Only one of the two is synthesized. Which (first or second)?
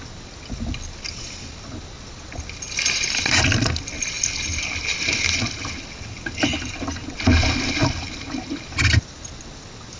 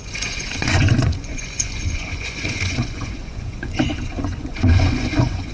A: second